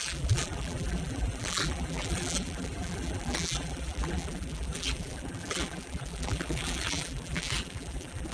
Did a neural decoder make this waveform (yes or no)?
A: yes